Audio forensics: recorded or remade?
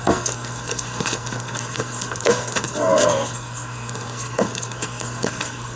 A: remade